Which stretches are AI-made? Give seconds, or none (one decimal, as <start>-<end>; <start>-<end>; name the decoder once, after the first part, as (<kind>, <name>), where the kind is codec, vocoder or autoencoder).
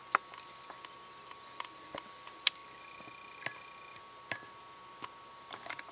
none